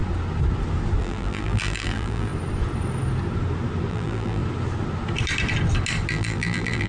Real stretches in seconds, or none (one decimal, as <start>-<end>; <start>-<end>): 0.0-1.0; 2.3-3.9; 4.4-6.1